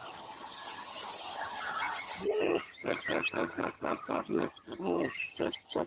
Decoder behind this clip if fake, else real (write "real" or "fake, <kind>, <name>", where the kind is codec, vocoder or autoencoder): fake, vocoder, HiFi-GAN